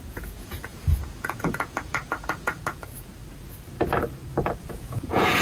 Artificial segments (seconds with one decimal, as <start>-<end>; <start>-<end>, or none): 0.0-3.1; 4.6-5.4